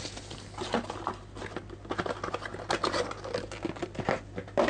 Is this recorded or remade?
recorded